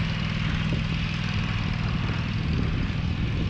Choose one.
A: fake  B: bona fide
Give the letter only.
B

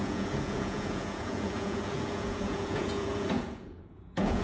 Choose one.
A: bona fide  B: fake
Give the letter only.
B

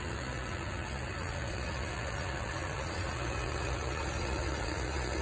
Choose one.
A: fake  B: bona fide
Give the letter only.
A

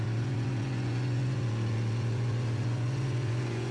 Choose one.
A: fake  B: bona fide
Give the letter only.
A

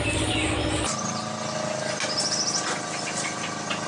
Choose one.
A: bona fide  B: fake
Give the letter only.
A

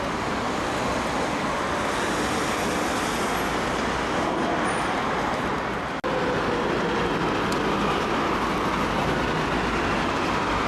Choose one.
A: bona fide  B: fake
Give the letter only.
A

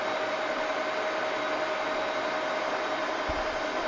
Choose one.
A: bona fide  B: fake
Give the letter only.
A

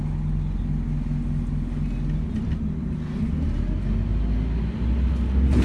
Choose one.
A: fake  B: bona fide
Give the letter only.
B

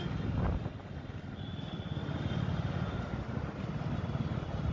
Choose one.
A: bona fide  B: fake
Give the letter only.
A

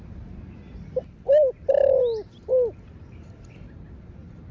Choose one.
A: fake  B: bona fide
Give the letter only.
B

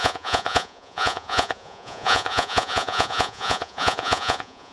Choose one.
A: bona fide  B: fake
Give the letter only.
B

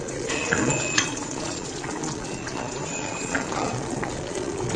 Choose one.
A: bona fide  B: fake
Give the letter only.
B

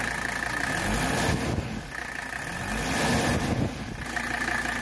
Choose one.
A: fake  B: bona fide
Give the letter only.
B